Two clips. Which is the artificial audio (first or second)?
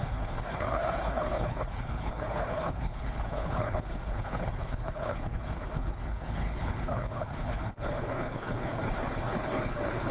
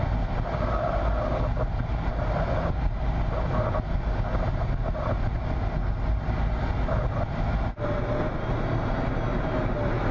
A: first